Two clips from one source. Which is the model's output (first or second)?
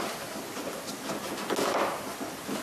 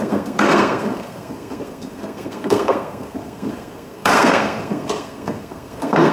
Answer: second